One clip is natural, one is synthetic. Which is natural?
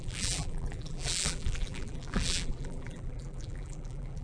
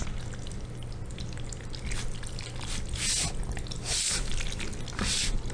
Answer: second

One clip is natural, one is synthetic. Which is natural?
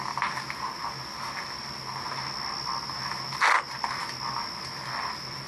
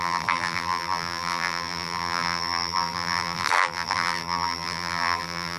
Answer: first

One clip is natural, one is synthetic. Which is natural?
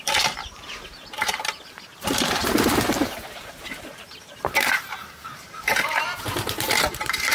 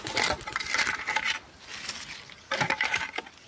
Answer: second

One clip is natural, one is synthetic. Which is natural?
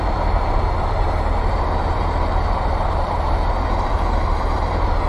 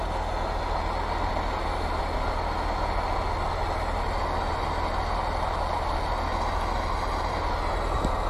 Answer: second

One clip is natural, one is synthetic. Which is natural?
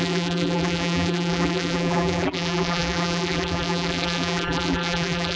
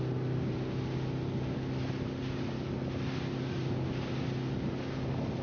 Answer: second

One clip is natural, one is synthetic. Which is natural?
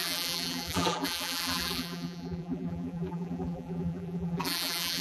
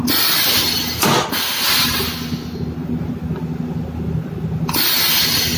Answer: second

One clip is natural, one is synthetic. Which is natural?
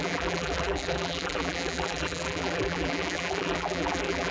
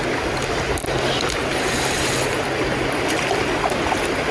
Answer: second